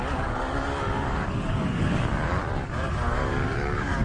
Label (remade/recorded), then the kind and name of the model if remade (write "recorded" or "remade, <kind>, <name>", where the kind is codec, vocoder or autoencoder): remade, codec, DAC